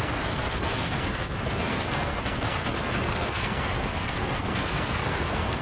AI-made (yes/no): yes